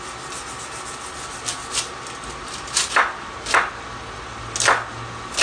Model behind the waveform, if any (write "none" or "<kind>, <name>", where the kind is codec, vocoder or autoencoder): none